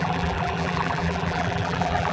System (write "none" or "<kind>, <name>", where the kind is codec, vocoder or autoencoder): vocoder, BigVGAN v2